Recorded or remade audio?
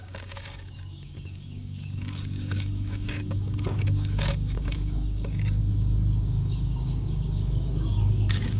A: remade